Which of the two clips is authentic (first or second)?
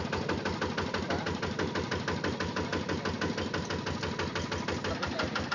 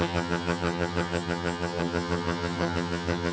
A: first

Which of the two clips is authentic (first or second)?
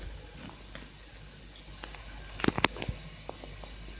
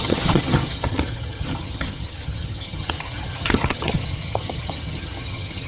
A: first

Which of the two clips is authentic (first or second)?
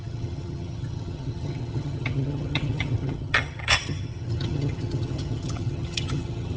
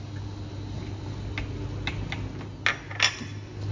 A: second